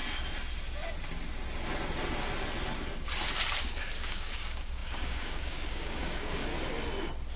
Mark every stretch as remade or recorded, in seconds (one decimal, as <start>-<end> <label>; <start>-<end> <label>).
0.0-3.6 recorded; 3.6-6.5 remade; 6.5-7.4 recorded